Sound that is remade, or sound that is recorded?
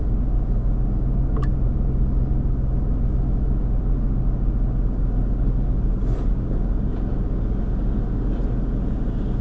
recorded